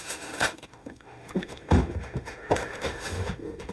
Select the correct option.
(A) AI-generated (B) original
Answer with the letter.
A